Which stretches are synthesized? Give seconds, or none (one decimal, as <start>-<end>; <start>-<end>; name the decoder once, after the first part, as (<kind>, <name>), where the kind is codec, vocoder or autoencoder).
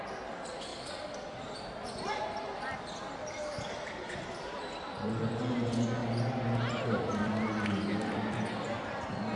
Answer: 0.7-5.4 (vocoder, BigVGAN v2); 6.0-9.0